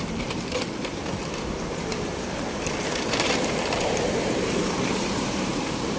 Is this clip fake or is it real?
fake